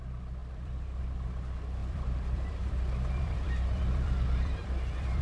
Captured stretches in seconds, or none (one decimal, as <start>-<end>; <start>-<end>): 0.0-0.4; 1.0-1.8